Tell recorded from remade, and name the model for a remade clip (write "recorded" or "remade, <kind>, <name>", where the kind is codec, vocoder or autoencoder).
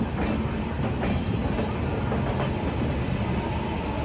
recorded